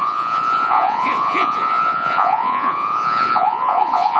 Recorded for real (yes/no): no